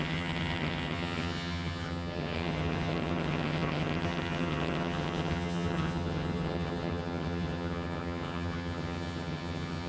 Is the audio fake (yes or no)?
yes